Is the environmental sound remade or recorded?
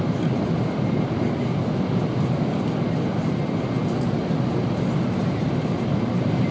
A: recorded